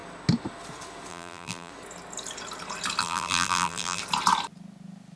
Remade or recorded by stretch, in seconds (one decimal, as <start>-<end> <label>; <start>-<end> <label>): 0.0-1.1 recorded; 1.1-1.7 remade; 1.7-3.0 recorded; 3.0-4.0 remade; 4.0-5.2 recorded